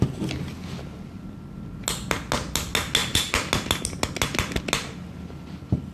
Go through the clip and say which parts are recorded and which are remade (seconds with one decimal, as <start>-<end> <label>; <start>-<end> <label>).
0.0-5.9 recorded